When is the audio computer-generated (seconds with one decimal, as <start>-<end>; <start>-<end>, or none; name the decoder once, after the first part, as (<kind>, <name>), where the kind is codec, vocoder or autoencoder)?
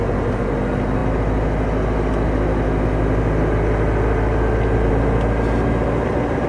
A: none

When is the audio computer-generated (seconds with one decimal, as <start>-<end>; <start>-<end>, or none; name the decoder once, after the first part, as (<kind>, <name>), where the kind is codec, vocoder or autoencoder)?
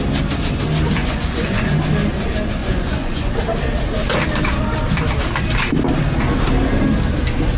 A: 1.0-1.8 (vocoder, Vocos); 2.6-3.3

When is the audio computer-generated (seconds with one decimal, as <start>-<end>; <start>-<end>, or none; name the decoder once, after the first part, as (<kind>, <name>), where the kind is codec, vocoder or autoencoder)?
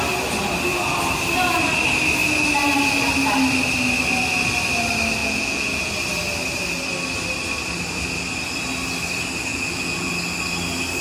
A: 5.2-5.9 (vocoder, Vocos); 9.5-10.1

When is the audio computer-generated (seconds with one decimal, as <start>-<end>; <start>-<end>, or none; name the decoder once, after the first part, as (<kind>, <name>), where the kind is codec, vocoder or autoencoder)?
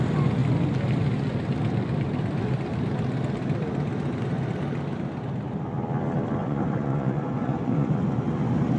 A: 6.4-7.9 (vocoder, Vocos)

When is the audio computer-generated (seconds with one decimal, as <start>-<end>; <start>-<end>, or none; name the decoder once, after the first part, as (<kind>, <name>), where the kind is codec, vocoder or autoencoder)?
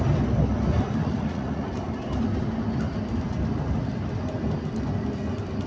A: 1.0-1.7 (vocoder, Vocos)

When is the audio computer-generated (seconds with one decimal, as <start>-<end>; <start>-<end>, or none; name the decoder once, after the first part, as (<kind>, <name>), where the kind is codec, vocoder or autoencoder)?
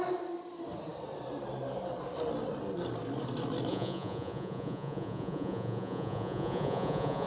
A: 3.7-7.3 (vocoder, Vocos)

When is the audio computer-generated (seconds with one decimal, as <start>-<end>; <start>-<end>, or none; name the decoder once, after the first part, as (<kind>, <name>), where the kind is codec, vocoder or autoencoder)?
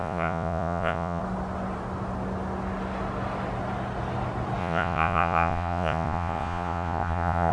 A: 0.0-1.2 (vocoder, Vocos); 4.6-7.5